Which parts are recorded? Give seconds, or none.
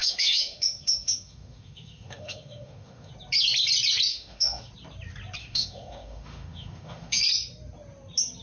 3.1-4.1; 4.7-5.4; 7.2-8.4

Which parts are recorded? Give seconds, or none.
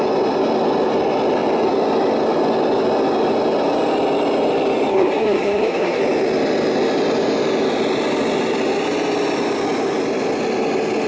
0.0-4.9; 6.0-11.1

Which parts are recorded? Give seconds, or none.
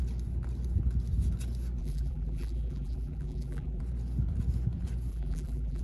0.0-1.8; 3.8-5.1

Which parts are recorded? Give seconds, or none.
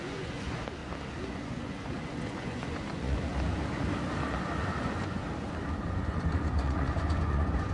0.8-1.3; 3.3-4.8; 5.2-5.9